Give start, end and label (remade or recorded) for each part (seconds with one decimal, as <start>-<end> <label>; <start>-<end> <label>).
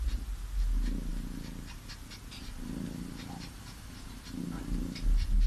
0.0-5.5 recorded